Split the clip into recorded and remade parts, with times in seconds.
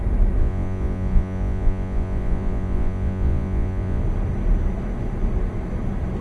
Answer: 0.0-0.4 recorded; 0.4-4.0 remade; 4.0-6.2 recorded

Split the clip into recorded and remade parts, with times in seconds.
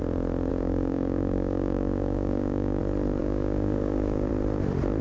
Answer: 0.0-0.5 recorded; 0.5-2.8 remade; 2.8-3.2 recorded; 3.2-4.3 remade; 4.3-5.0 recorded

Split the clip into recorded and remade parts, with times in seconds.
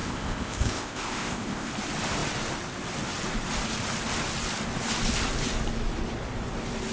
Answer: 0.0-1.7 remade; 1.7-6.9 recorded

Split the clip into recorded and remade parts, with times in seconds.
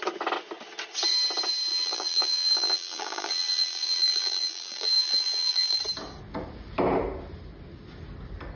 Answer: 0.0-1.7 recorded; 1.7-5.8 remade; 5.8-8.6 recorded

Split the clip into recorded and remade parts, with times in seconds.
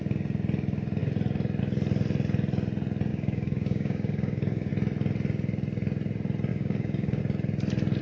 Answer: 0.0-3.1 recorded; 3.1-4.7 remade; 4.7-6.5 recorded; 6.5-7.2 remade; 7.2-8.0 recorded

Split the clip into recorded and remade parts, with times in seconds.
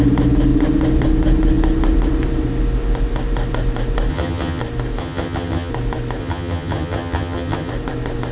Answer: 0.0-4.1 recorded; 4.1-4.6 remade; 4.6-5.0 recorded; 5.0-5.7 remade; 5.7-6.2 recorded; 6.2-7.7 remade; 7.7-8.3 recorded